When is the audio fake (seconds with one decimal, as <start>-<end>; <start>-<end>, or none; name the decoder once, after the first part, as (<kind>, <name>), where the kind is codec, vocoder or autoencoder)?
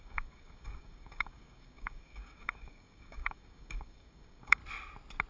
0.0-4.6 (codec, DAC)